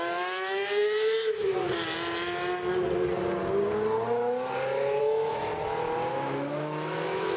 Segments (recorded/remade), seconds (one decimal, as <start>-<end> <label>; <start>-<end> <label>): 0.0-1.6 remade; 1.6-5.0 recorded; 5.0-5.5 remade; 5.5-6.1 recorded; 6.1-7.4 remade